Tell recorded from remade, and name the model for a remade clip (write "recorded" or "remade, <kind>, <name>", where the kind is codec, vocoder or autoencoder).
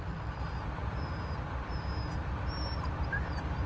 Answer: recorded